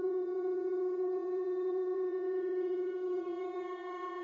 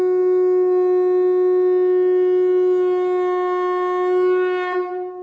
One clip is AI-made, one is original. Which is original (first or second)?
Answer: second